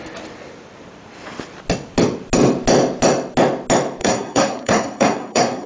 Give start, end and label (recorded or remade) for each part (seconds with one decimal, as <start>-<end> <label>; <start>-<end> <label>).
0.0-4.0 recorded; 4.0-5.7 remade